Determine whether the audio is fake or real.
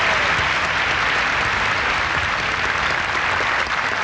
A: real